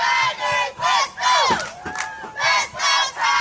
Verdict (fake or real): real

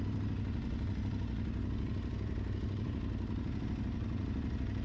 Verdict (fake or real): real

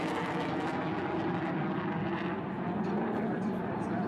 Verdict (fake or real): real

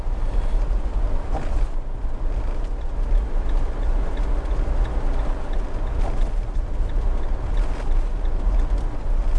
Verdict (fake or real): real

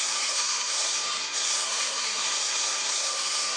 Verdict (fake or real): fake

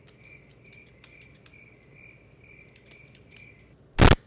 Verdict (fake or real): real